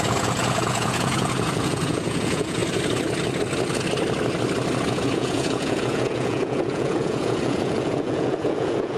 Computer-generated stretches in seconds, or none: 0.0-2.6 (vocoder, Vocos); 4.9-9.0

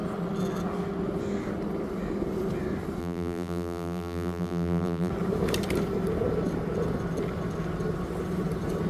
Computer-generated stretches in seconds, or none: 3.0-5.1 (vocoder, BigVGAN v2)

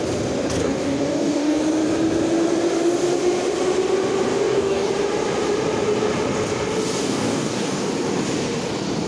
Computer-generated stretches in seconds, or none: 0.6-1.6 (codec, DAC); 4.3-4.9; 7.0-7.8

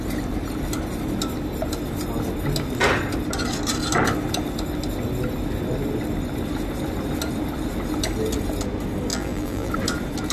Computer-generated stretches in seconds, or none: 9.1-9.7 (vocoder, BigVGAN v2)